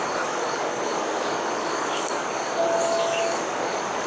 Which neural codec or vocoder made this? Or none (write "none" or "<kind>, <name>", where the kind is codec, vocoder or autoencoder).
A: codec, DAC